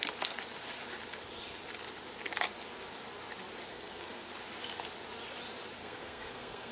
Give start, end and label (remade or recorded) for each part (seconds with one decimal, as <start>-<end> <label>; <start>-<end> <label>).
0.0-3.7 recorded; 3.7-4.3 remade; 4.3-5.8 recorded; 5.8-6.7 remade